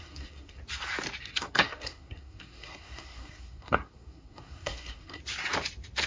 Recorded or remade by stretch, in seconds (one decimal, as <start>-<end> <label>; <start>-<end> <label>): 0.0-0.6 remade; 0.6-1.2 recorded; 1.2-5.2 remade; 5.2-6.1 recorded